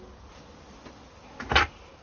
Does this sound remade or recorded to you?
recorded